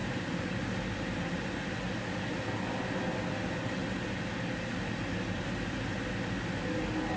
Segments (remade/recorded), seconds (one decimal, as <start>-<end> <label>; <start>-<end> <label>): 0.0-7.2 recorded